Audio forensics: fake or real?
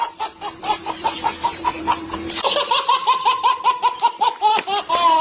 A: fake